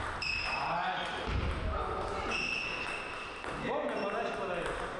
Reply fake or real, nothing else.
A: real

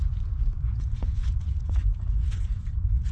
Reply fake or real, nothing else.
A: fake